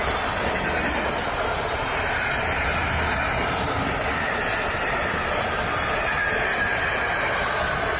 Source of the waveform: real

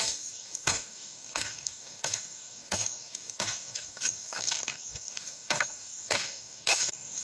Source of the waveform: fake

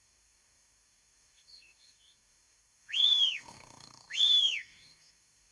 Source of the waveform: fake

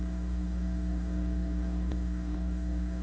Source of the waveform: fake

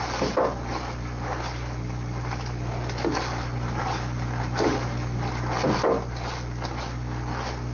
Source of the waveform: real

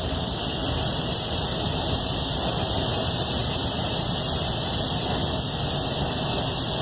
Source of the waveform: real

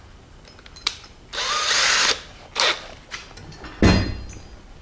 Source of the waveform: real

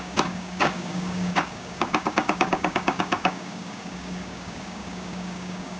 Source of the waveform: fake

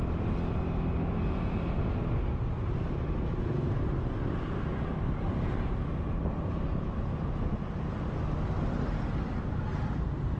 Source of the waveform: real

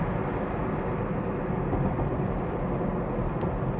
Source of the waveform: real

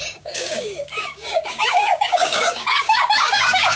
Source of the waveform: fake